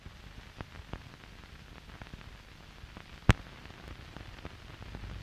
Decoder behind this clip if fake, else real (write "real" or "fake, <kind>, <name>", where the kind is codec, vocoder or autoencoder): real